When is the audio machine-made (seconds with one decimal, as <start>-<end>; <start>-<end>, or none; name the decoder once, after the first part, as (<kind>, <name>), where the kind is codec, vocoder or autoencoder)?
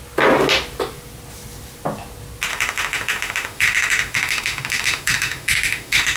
2.5-6.2 (autoencoder, DAC-VAE)